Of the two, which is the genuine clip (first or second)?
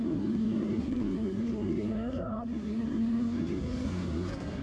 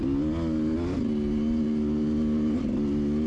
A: second